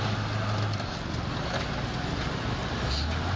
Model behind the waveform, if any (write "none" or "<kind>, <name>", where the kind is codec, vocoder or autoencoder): none